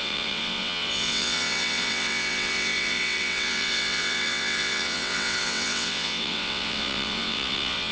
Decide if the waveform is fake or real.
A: fake